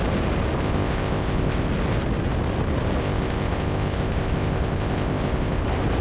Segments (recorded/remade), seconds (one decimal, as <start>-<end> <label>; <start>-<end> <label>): 0.0-0.6 recorded; 0.6-1.7 remade; 1.7-3.0 recorded; 3.0-5.6 remade; 5.6-6.0 recorded